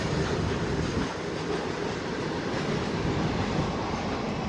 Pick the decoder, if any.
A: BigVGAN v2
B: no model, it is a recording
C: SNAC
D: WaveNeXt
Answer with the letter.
B